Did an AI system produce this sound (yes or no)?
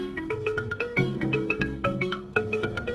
yes